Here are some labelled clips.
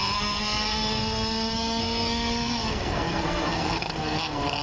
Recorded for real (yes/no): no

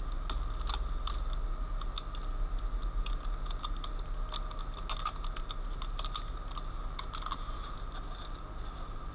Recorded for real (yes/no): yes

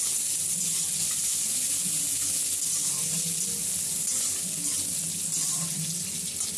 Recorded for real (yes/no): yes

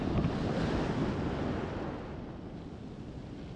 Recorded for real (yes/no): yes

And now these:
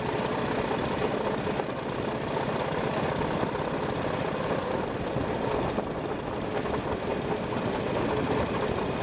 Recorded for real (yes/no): yes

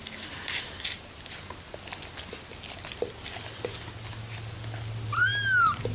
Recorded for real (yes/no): yes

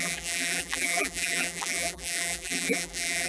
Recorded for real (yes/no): no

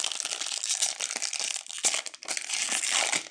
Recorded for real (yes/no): yes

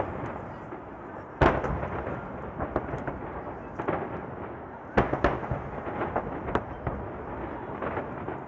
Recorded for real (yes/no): yes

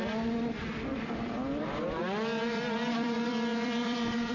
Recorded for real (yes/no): no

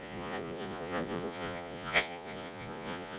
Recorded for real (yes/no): no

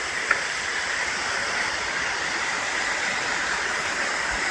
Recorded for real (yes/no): yes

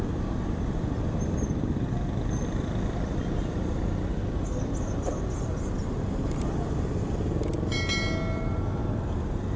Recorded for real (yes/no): yes